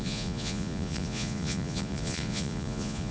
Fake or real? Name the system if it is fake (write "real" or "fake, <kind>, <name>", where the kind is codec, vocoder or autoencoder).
fake, vocoder, Vocos